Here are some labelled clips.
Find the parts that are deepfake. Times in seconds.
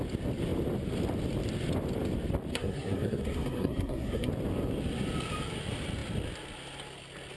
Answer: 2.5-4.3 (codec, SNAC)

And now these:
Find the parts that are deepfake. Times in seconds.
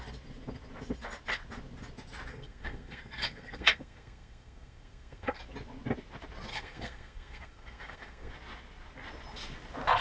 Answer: 2.3-5.4 (codec, SNAC); 6.5-8.3